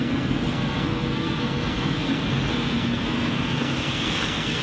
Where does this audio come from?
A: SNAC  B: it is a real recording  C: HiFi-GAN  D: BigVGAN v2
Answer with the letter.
A